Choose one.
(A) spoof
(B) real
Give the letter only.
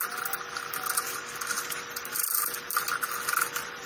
A